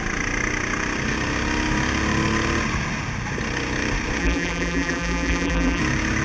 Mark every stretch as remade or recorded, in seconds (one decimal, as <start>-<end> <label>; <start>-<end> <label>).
0.0-4.2 recorded; 4.2-5.8 remade; 5.8-6.2 recorded

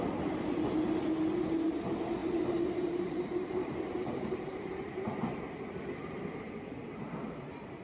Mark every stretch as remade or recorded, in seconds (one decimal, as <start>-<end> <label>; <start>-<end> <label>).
0.0-2.2 recorded; 2.2-5.4 remade; 5.4-7.8 recorded

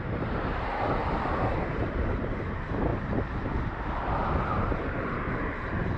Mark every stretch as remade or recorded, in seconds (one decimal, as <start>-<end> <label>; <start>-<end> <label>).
0.0-6.0 remade

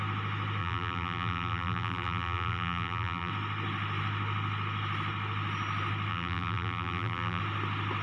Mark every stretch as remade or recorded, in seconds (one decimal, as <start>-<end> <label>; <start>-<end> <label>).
0.0-0.6 recorded; 0.6-3.3 remade; 3.3-6.1 recorded; 6.1-7.4 remade; 7.4-8.0 recorded

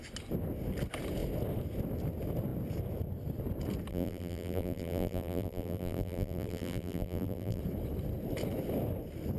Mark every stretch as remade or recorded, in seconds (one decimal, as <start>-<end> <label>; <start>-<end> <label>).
0.0-3.9 recorded; 3.9-7.6 remade; 7.6-9.4 recorded

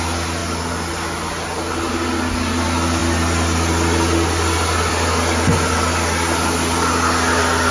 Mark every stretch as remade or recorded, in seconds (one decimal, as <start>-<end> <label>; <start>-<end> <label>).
0.0-7.7 recorded